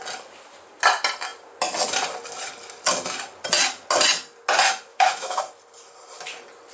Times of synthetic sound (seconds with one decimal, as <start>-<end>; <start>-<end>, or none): 4.9-5.4